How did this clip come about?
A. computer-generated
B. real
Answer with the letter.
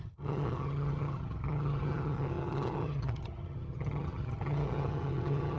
A